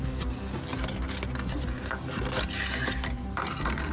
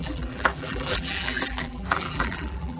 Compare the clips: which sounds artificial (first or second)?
second